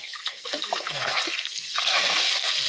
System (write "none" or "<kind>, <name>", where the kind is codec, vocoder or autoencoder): codec, SNAC